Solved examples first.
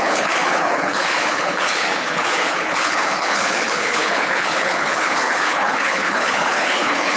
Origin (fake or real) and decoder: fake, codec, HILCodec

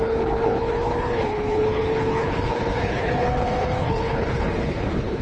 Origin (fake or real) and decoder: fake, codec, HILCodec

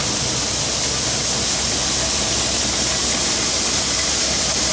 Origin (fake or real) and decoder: real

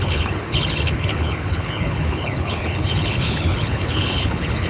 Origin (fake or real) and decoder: fake, codec, HILCodec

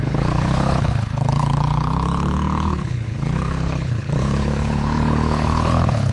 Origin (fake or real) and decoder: fake, codec, HILCodec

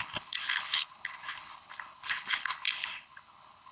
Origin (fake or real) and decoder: fake, codec, HILCodec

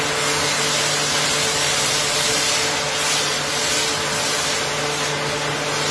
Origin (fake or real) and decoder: real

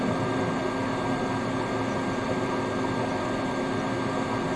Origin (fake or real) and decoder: real